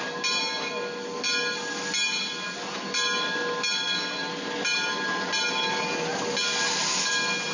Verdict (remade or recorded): recorded